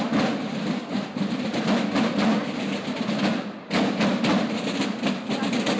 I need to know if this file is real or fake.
real